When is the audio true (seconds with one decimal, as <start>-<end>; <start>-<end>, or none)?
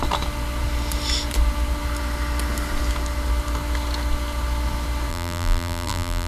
0.0-5.1